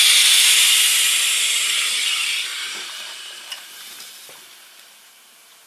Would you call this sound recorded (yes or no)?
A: no